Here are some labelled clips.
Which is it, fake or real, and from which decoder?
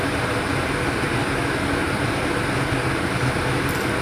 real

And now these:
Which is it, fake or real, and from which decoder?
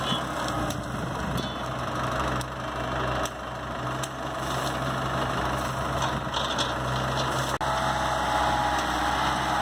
real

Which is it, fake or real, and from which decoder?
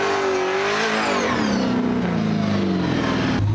real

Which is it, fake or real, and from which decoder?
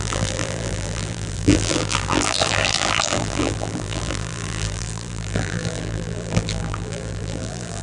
fake, vocoder, BigVGAN v2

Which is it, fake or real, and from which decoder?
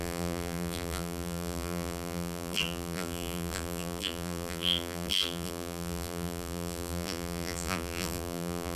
fake, vocoder, BigVGAN v2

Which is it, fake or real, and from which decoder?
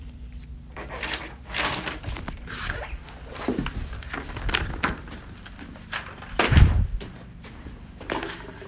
fake, vocoder, BigVGAN v2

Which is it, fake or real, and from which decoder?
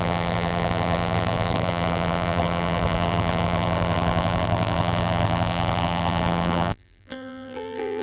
fake, vocoder, BigVGAN v2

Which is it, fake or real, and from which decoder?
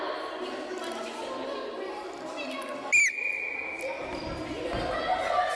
real